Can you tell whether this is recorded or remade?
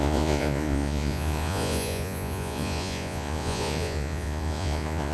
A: remade